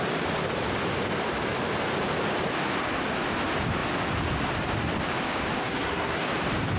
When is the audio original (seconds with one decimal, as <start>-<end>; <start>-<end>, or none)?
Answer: 0.0-5.6; 6.3-6.8

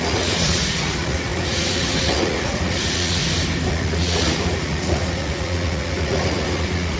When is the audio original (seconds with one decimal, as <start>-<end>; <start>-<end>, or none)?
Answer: 3.2-3.7

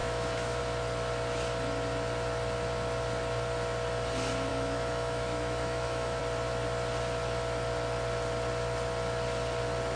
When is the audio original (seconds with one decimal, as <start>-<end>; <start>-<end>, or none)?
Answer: 0.6-4.5; 6.2-10.0

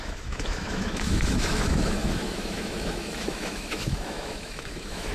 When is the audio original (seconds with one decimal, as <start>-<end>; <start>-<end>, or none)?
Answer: none

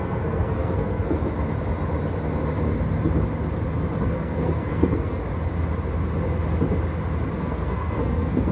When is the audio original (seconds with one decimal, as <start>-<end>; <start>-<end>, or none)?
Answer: 1.2-4.0; 5.2-7.4

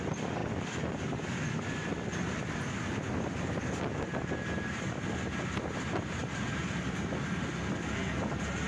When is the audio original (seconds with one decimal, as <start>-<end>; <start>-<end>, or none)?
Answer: 0.0-0.4; 4.0-6.2; 7.7-8.7

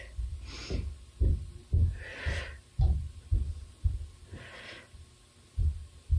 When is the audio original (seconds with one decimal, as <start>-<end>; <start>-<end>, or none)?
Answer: 0.0-6.2